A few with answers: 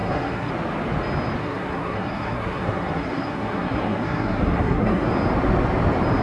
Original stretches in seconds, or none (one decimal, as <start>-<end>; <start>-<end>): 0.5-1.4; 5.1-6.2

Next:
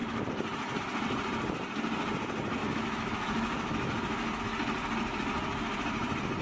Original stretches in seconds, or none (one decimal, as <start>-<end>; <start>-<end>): 0.0-2.6; 4.4-6.4

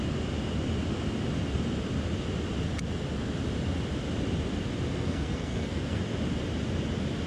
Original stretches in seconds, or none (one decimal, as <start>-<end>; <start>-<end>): 0.0-4.9; 6.0-7.3